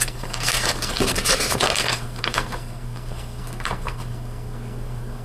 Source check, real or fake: fake